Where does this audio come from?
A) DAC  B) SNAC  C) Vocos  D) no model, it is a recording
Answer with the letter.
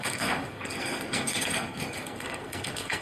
B